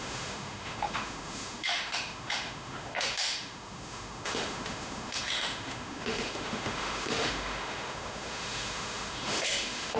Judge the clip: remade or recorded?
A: remade